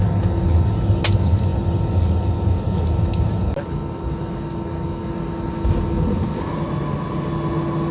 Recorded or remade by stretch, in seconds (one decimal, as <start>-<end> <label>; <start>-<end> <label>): 0.0-7.9 recorded